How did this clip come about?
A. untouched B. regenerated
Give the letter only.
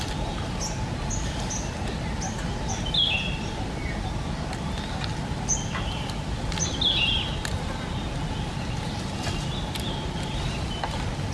A